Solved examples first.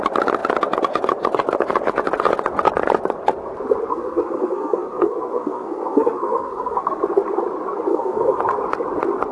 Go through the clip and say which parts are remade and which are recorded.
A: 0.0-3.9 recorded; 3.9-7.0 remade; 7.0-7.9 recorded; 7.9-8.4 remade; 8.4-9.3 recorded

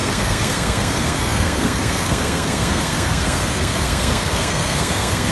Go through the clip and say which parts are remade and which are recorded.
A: 0.0-5.3 remade

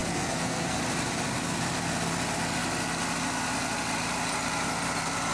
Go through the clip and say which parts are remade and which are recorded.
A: 0.0-0.8 remade; 0.8-5.3 recorded